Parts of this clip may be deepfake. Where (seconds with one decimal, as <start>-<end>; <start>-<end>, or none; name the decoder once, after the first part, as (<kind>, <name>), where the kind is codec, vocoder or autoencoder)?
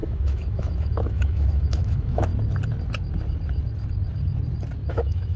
0.0-2.3 (autoencoder, DAC-VAE); 4.9-5.4